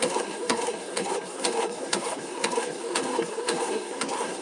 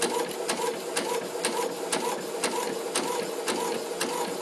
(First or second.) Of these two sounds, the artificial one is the first